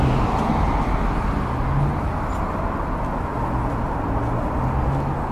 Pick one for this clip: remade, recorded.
recorded